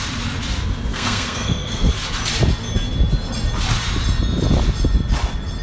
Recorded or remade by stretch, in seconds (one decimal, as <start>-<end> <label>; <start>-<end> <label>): 0.0-0.9 recorded; 0.9-1.9 remade; 1.9-5.6 recorded